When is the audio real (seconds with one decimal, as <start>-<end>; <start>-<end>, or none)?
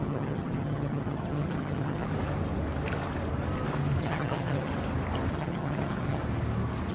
2.1-4.0; 4.7-5.3; 6.2-6.9